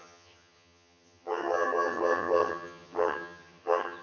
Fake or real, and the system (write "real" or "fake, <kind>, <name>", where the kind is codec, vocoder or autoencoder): fake, vocoder, HiFi-GAN